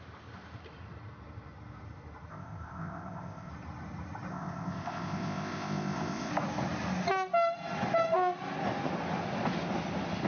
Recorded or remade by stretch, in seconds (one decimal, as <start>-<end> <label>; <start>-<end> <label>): 0.0-2.3 recorded; 2.3-3.5 remade; 3.5-4.3 recorded; 4.3-6.3 remade; 6.3-10.3 recorded